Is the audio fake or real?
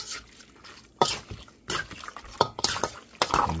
real